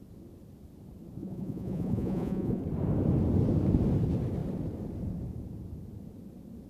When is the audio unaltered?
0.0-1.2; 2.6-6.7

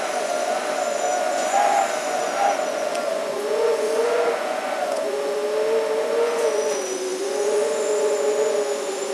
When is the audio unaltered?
5.4-6.0

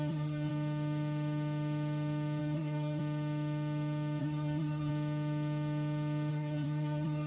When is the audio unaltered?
0.5-2.4; 3.0-4.2; 4.9-6.3

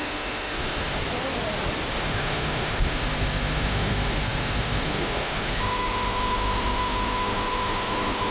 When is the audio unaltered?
1.0-2.0

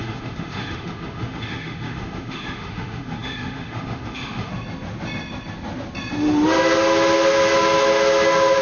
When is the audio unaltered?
4.5-8.6

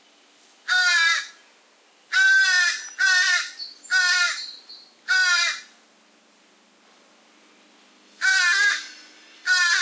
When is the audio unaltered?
0.0-9.8

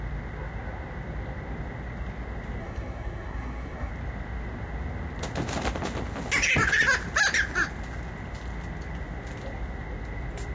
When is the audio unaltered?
0.0-2.6; 3.9-10.5

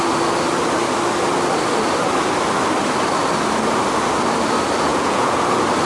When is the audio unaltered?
0.0-4.9; 5.4-5.9